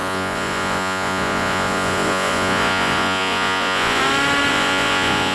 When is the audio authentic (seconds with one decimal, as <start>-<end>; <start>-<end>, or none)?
4.0-4.5